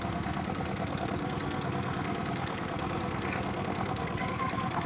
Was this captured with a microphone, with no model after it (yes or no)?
no